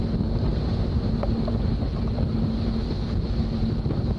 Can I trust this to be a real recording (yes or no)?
no